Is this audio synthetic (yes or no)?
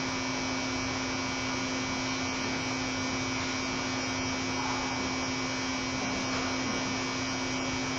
no